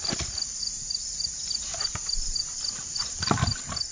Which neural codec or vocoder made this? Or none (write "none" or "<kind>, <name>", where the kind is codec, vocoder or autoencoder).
vocoder, BigVGAN v2